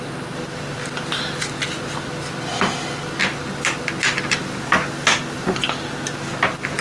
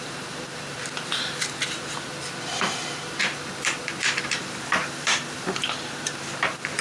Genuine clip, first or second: first